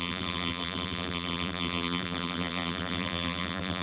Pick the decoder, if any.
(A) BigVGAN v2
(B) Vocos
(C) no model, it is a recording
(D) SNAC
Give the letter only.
A